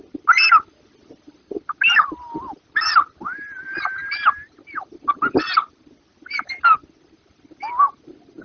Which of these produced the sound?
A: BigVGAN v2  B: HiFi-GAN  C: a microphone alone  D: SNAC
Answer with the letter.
C